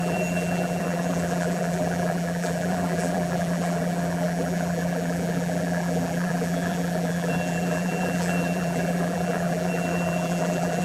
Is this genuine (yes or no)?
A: no